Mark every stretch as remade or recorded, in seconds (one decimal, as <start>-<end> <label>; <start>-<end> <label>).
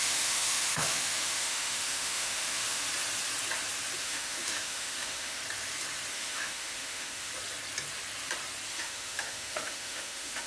0.0-2.8 remade; 2.8-4.0 recorded; 4.0-5.4 remade; 5.4-6.1 recorded; 6.1-7.3 remade; 7.3-8.7 recorded; 8.7-10.5 remade